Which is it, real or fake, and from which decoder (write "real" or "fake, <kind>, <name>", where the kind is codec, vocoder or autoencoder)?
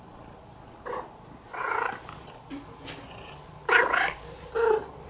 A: real